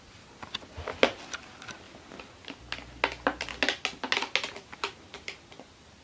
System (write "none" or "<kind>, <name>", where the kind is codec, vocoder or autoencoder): none